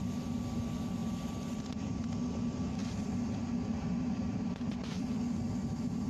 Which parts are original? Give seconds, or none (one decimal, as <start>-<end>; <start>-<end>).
0.0-2.8; 5.1-6.1